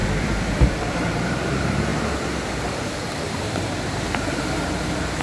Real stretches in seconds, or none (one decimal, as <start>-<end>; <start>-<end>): none